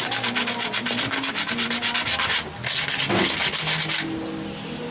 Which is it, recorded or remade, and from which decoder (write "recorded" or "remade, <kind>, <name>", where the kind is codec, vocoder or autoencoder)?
recorded